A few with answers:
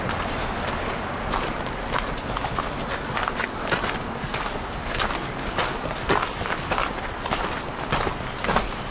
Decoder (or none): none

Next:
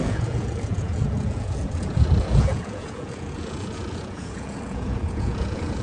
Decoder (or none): vocoder, Vocos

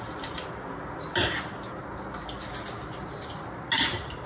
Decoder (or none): none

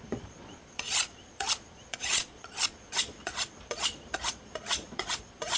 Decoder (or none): vocoder, Vocos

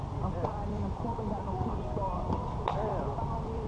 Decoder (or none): vocoder, BigVGAN v2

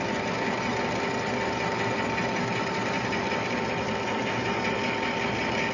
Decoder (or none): none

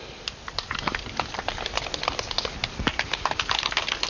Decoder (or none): none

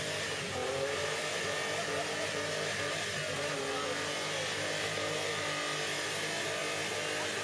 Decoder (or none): none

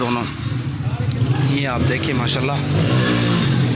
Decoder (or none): none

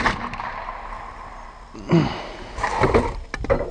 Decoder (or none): none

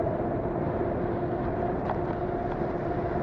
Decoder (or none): none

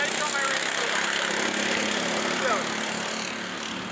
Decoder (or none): none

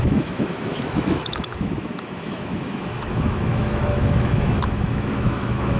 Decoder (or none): autoencoder, DAC-VAE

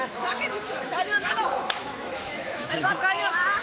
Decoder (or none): autoencoder, DAC-VAE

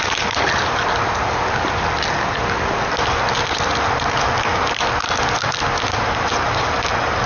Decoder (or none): none